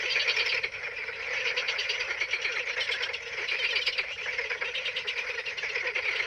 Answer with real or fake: real